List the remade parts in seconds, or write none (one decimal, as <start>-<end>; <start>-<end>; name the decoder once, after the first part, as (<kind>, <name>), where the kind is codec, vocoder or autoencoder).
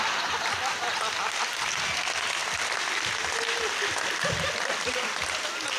none